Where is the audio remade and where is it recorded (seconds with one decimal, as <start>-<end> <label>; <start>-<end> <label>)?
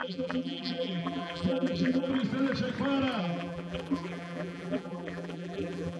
0.0-2.1 remade; 2.1-3.2 recorded; 3.2-6.0 remade